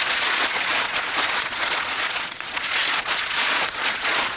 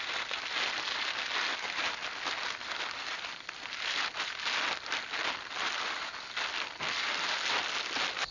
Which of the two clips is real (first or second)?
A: second